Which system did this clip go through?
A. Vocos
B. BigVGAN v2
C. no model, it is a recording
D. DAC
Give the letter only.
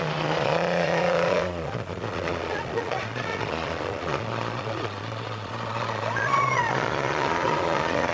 A